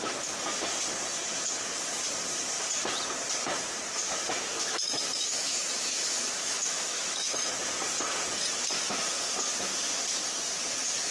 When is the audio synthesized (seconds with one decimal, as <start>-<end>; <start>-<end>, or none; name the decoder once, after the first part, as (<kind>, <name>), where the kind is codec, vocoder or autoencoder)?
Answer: 4.5-7.6 (autoencoder, DAC-VAE)